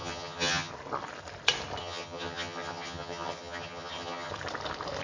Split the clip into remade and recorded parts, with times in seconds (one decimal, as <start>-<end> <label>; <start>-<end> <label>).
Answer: 0.0-0.7 remade; 0.7-1.8 recorded; 1.8-4.3 remade; 4.3-5.0 recorded